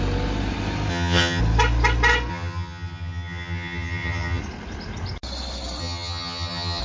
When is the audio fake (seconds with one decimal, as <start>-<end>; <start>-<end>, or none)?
0.9-1.4; 2.3-4.4; 5.8-6.8